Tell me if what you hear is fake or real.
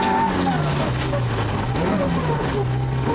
real